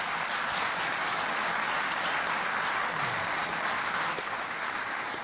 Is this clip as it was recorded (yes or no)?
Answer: yes